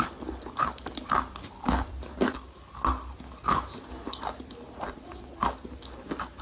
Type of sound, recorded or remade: recorded